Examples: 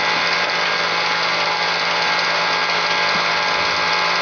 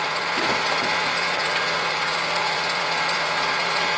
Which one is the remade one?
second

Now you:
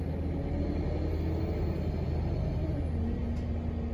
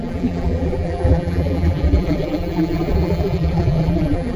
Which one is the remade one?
second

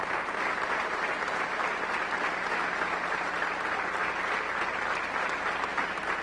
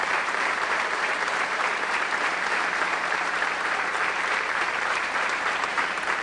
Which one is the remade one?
second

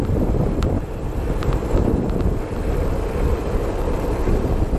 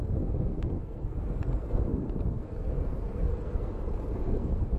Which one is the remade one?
second